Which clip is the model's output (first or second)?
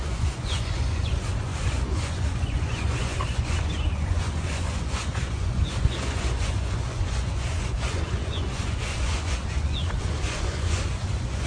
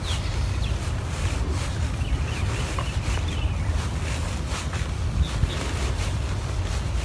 first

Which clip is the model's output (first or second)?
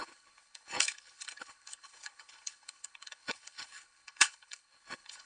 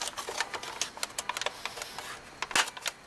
first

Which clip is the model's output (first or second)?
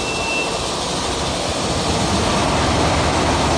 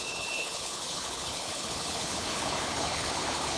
second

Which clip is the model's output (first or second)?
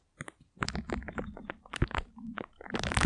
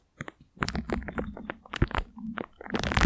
first